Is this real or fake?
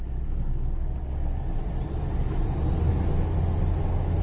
real